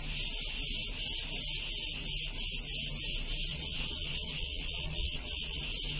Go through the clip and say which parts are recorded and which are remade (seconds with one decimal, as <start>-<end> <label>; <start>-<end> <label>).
0.0-3.5 recorded; 3.5-5.6 remade; 5.6-6.0 recorded